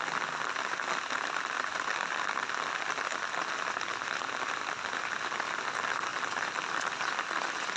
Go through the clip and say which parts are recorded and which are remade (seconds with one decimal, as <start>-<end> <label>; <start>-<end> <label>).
0.0-6.1 recorded; 6.1-7.0 remade; 7.0-7.8 recorded